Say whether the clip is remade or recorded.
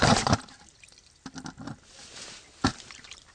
recorded